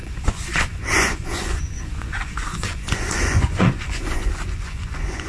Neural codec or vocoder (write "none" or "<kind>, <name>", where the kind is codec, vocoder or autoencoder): vocoder, Vocos